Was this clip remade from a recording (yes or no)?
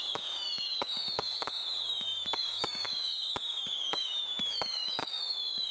yes